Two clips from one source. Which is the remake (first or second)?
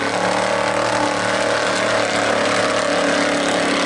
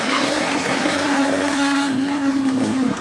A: second